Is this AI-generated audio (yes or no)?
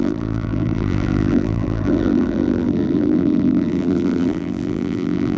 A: yes